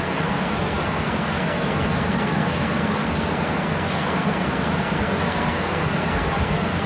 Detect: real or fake fake